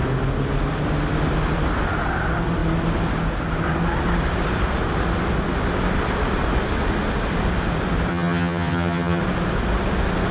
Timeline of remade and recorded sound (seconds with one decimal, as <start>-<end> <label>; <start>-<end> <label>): 0.0-8.1 recorded; 8.1-9.2 remade; 9.2-10.3 recorded